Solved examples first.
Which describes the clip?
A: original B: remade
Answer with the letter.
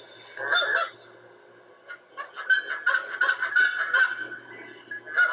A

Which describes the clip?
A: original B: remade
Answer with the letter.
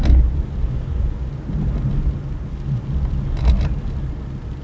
A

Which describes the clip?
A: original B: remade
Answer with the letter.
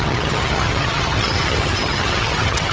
B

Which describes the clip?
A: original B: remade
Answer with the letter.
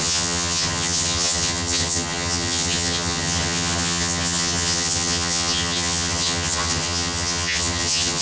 B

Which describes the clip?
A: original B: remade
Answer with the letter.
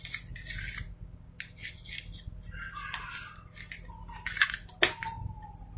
A